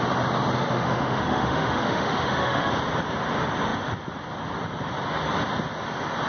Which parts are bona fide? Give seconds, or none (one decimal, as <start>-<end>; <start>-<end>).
0.0-0.6; 2.7-6.3